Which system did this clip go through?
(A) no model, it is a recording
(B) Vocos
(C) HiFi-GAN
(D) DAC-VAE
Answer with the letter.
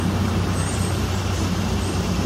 A